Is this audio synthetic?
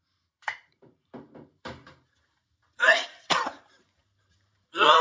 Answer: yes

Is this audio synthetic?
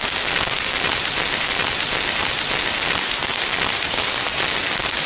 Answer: no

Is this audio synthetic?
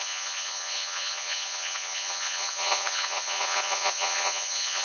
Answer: yes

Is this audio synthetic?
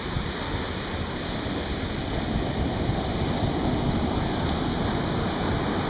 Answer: no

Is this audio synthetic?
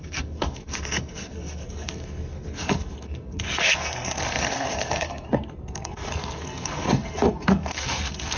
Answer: yes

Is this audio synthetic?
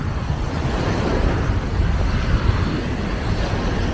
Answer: no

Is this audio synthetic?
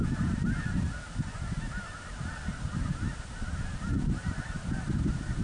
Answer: no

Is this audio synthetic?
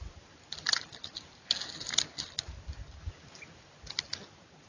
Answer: no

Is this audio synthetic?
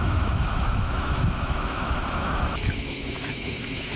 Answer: yes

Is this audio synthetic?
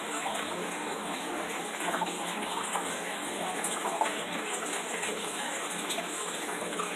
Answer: yes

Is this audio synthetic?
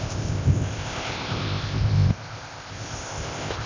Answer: yes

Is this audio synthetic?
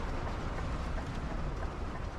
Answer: yes